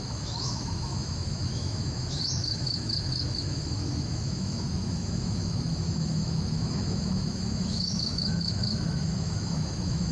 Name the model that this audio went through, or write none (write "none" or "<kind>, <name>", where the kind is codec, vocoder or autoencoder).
autoencoder, DAC-VAE